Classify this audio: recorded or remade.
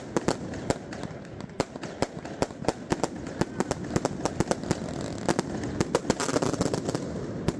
recorded